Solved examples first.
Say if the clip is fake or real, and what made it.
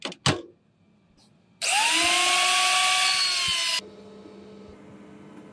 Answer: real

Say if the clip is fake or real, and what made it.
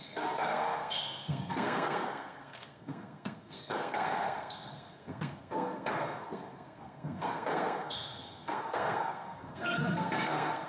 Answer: fake, codec, SNAC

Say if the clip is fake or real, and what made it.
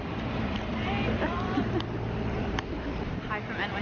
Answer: fake, vocoder, BigVGAN v2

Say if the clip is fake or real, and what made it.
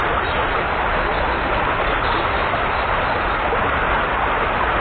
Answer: real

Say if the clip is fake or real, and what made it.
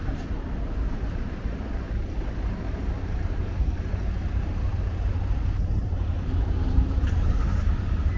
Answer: fake, vocoder, BigVGAN v2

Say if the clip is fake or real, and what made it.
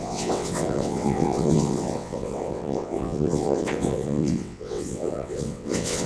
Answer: fake, vocoder, WaveNeXt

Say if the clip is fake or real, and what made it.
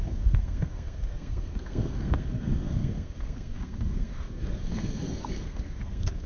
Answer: fake, codec, SNAC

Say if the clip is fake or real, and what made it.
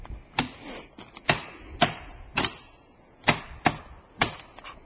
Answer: real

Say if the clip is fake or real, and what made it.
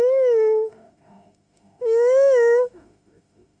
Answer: fake, autoencoder, DAC-VAE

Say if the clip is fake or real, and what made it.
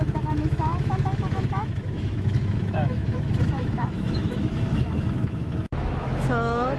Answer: fake, autoencoder, DAC-VAE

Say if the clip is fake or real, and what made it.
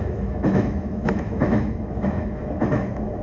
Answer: fake, autoencoder, DAC-VAE